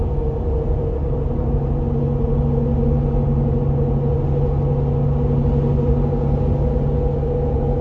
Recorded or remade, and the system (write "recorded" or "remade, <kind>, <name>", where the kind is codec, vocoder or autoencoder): recorded